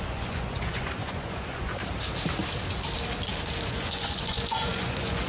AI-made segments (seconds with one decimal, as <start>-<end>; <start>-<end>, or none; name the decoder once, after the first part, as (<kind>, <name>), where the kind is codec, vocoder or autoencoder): 0.0-1.8 (vocoder, Vocos); 3.7-5.3